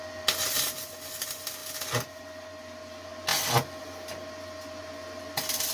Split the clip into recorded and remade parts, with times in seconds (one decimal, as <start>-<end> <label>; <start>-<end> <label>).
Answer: 0.0-5.7 recorded